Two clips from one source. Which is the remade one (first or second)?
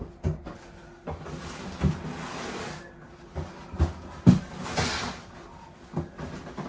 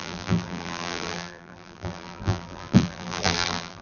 second